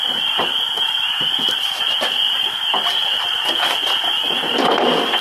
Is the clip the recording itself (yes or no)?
yes